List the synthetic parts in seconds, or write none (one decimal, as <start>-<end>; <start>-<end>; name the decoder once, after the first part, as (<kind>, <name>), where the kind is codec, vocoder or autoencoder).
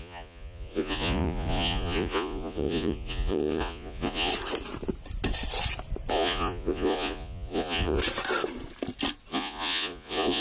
0.0-4.3 (vocoder, Vocos); 6.1-8.0; 9.3-10.4